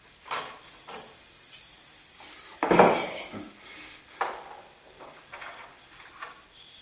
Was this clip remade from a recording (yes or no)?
no